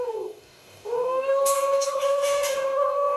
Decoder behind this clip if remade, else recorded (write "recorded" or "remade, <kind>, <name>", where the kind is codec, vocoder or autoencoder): remade, codec, DAC